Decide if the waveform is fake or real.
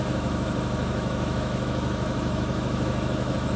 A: fake